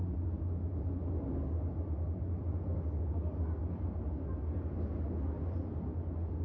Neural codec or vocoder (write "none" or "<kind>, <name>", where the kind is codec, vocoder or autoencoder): none